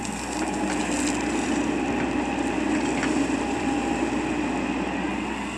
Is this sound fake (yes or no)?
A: yes